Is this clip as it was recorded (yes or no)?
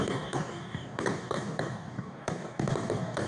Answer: no